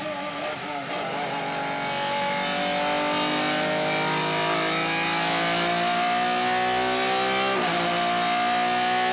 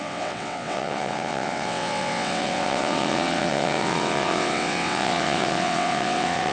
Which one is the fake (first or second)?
second